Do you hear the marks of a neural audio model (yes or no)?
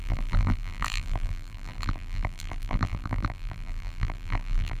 yes